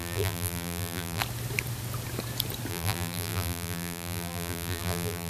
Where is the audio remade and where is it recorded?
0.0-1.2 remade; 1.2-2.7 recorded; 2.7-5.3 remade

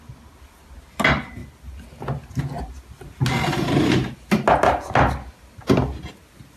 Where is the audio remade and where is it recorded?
0.0-6.6 recorded

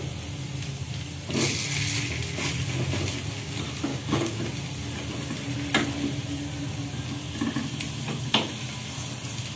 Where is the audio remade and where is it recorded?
0.0-3.9 recorded; 3.9-4.4 remade; 4.4-9.6 recorded

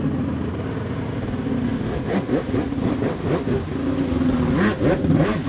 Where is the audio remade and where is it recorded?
0.0-5.5 recorded

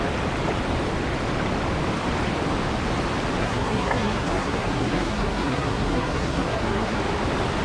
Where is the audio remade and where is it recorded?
0.0-3.4 recorded; 3.4-7.0 remade; 7.0-7.6 recorded